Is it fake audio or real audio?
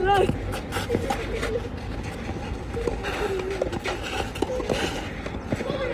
real